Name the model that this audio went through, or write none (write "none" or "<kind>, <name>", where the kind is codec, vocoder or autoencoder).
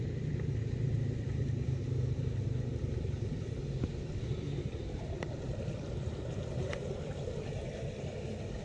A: none